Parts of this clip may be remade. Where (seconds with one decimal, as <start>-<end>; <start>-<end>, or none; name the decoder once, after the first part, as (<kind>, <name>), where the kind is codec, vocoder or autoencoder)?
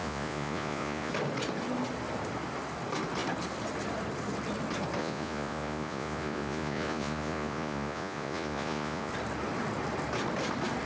0.0-1.1 (vocoder, Vocos); 5.0-9.1